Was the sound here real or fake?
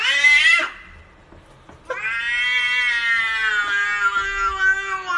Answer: real